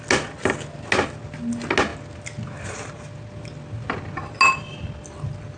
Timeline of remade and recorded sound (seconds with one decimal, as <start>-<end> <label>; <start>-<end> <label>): 0.0-5.6 recorded